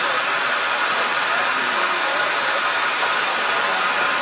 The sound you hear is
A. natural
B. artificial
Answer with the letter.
B